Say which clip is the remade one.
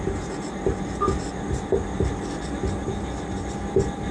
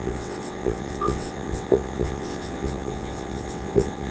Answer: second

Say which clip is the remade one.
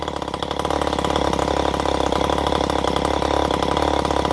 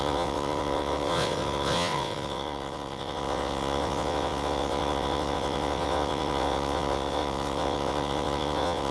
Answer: second